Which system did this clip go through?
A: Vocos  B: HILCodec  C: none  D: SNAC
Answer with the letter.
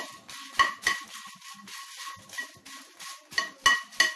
C